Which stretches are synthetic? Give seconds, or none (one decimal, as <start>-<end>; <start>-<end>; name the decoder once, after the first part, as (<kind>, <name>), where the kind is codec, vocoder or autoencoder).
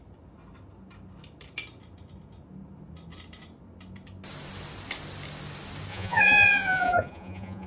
5.9-7.7 (vocoder, Vocos)